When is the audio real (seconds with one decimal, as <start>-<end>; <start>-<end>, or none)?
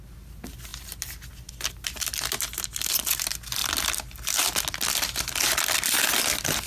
0.0-6.7